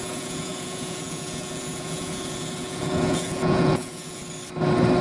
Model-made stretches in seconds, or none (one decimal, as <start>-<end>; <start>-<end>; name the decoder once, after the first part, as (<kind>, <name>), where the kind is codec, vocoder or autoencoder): 0.0-4.2 (vocoder, Vocos)